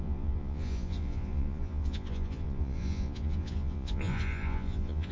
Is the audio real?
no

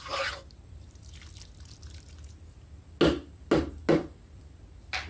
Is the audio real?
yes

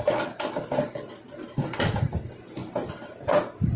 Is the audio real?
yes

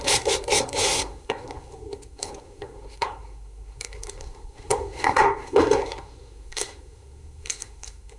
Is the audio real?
no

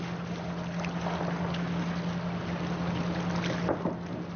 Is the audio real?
yes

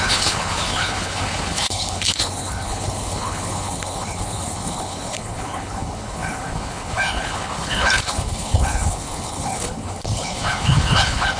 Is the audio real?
no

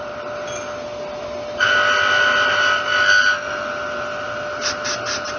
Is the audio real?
yes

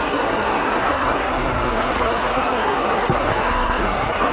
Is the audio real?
no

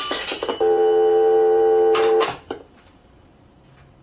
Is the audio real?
no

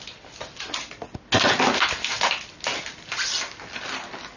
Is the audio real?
yes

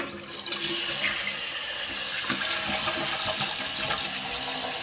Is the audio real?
yes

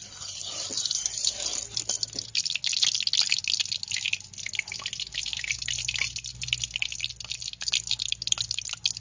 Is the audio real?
yes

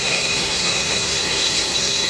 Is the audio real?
no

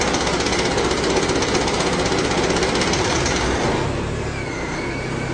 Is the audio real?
yes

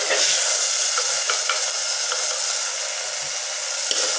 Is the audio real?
yes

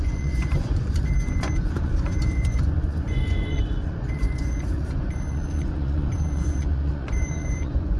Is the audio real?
no